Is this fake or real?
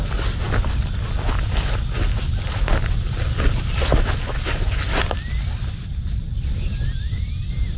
real